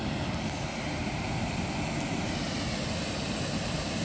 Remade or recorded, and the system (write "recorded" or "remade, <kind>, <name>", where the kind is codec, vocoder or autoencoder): recorded